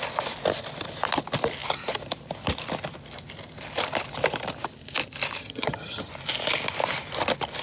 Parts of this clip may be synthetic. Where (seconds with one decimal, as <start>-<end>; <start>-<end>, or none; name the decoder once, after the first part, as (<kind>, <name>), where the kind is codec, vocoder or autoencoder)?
5.4-6.1 (vocoder, HiFi-GAN)